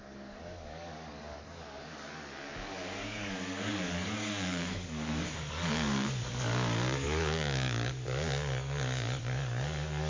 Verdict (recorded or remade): remade